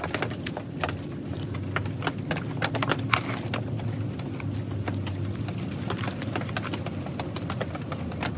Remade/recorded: recorded